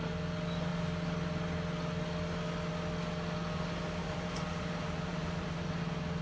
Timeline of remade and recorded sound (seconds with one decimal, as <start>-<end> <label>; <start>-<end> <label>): 0.0-4.0 recorded; 4.0-5.8 remade; 5.8-6.2 recorded